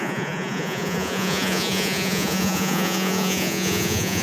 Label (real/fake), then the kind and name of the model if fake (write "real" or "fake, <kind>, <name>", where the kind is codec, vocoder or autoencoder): fake, vocoder, Vocos